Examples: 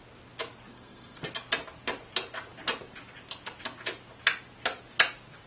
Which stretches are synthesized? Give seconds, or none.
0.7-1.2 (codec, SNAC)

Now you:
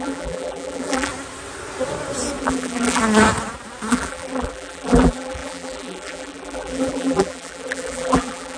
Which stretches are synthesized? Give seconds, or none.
0.0-1.1 (vocoder, BigVGAN v2); 2.4-3.0; 3.9-8.6